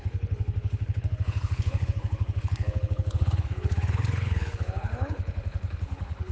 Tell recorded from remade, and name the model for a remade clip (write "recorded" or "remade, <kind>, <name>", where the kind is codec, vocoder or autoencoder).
remade, codec, HILCodec